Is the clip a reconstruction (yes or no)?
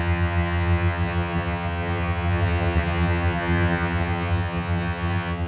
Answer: yes